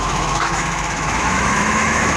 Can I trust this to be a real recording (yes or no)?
no